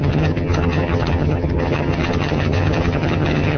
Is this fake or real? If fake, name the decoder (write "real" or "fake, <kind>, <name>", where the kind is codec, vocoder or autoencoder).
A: fake, vocoder, HiFi-GAN